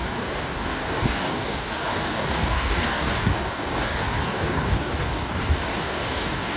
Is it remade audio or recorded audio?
remade